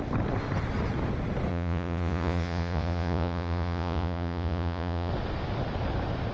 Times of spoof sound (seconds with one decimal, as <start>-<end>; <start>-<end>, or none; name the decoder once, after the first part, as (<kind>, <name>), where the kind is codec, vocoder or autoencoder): 1.5-5.1 (vocoder, Vocos)